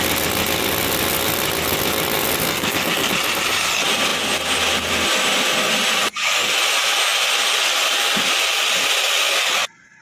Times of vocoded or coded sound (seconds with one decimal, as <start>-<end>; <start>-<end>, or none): 2.4-3.1